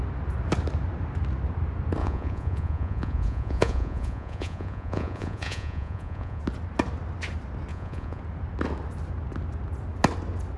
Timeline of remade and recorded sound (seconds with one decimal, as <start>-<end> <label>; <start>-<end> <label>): 0.0-2.0 recorded; 2.0-6.4 remade; 6.4-7.7 recorded; 7.7-8.2 remade; 8.2-10.6 recorded